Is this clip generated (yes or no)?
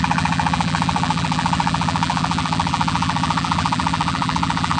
yes